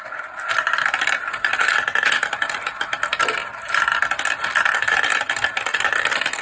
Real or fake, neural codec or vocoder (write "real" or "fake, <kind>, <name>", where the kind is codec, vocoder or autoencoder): real